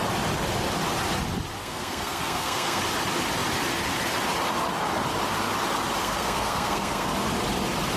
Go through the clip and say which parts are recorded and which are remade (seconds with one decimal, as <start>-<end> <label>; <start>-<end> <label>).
0.0-1.6 recorded; 1.6-2.8 remade; 2.8-6.0 recorded; 6.0-7.1 remade; 7.1-8.0 recorded